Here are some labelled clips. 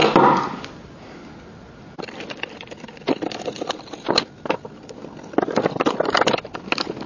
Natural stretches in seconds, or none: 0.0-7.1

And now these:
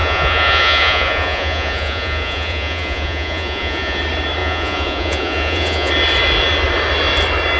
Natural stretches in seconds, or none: 4.0-4.4; 5.9-7.6

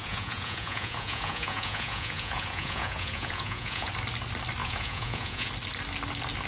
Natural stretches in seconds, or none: 3.9-4.6; 5.5-6.5

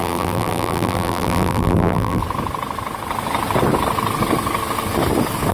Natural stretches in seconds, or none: 2.2-5.5